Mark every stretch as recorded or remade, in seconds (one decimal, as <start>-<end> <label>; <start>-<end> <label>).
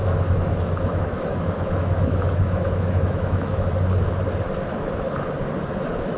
0.0-3.7 remade; 3.7-4.7 recorded; 4.7-5.3 remade; 5.3-6.2 recorded